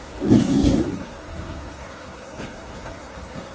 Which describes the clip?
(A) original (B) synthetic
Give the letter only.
B